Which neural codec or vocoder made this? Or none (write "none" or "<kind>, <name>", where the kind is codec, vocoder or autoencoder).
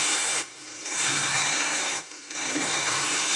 codec, SNAC